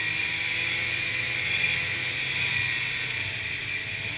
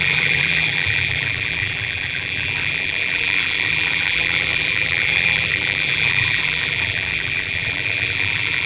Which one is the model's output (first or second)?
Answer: second